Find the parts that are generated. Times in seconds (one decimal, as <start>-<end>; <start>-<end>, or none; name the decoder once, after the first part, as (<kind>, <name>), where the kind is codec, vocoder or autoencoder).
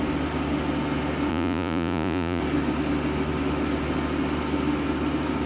1.3-2.4 (vocoder, Vocos)